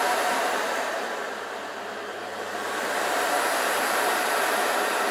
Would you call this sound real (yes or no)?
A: no